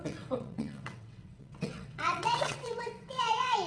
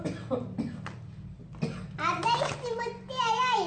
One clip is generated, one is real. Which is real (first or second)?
second